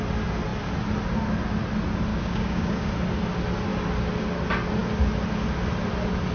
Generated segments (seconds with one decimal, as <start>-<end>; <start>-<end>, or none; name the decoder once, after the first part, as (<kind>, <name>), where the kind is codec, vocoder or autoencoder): 2.1-2.9 (codec, DAC)